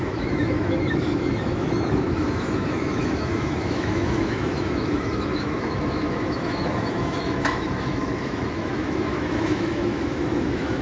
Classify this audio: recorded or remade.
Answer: remade